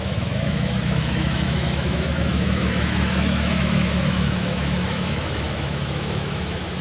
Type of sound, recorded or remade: remade